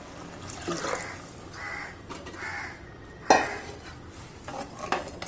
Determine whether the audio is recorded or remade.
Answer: recorded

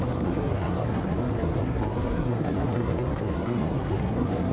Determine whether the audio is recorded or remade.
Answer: remade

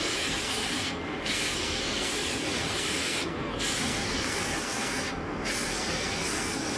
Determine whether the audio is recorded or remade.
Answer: remade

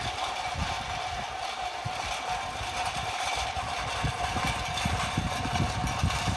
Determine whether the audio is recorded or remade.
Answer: recorded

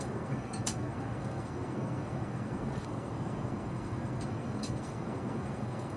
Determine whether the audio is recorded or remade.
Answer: remade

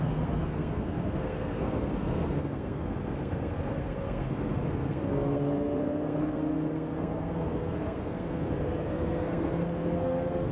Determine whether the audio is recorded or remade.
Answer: remade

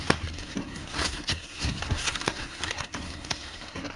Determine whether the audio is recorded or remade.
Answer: remade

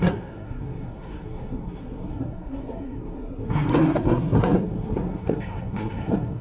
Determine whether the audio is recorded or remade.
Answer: remade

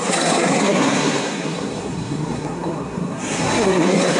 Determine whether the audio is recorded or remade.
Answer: remade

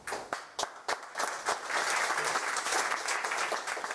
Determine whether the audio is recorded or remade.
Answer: recorded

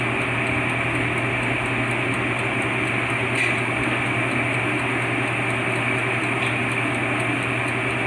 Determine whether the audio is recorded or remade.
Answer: recorded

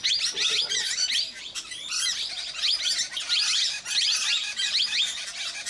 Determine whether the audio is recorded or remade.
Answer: recorded